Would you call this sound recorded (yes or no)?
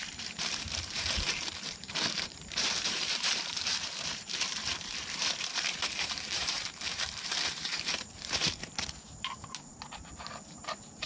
no